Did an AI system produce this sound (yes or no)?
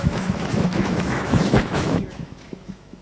yes